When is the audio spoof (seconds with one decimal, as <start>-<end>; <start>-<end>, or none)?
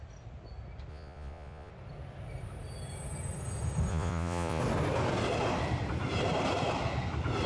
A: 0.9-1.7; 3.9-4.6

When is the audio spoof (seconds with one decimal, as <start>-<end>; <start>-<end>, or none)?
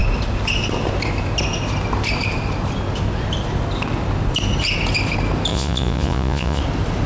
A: 5.5-6.6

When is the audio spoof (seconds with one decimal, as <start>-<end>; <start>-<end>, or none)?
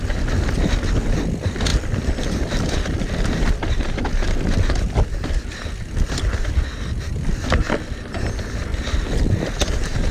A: 1.7-5.3; 8.7-10.1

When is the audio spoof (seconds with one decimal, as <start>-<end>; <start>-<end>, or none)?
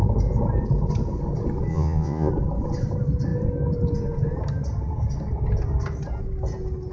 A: 1.7-2.3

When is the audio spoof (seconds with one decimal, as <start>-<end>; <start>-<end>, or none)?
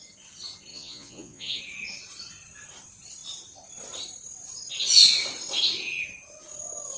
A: 0.7-1.6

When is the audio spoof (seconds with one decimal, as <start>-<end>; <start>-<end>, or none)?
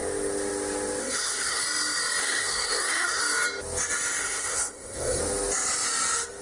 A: 1.0-1.6; 2.2-3.2; 4.2-5.2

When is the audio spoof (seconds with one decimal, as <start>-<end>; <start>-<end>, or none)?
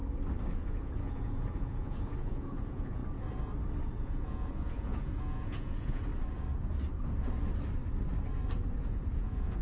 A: 0.5-3.0; 4.0-6.1; 8.8-9.6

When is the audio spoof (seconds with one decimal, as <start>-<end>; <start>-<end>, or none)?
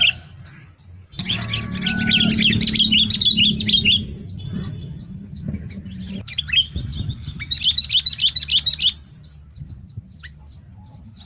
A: none